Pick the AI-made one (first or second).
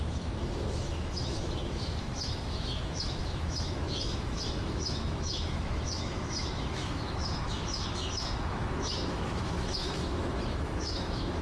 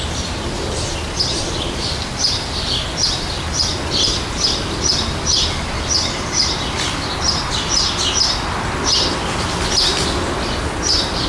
first